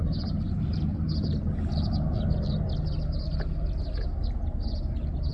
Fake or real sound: real